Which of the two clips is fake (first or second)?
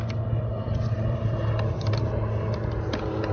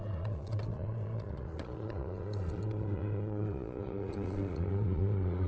second